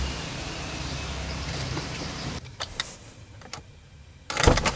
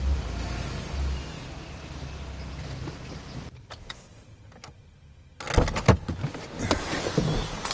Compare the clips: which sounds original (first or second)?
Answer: second